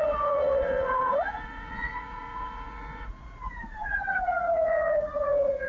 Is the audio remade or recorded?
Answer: remade